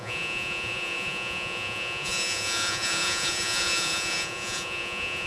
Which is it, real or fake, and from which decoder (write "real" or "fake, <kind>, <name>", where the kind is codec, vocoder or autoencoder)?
fake, vocoder, Vocos